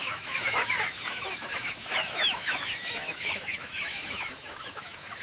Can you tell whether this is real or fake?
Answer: fake